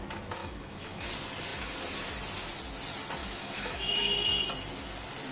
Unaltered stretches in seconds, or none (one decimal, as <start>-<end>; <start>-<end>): 0.0-0.4; 1.1-3.2; 4.4-5.3